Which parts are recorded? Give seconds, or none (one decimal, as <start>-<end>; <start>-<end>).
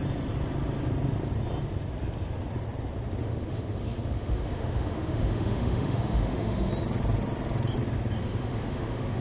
0.0-3.2; 6.7-8.2